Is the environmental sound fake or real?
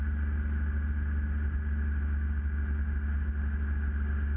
real